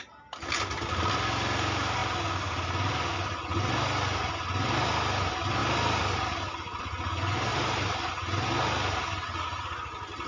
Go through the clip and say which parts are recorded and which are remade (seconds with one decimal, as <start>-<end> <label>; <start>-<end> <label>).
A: 0.0-7.5 recorded; 7.5-8.1 remade; 8.1-10.3 recorded